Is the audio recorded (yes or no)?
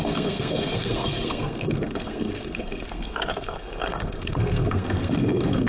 no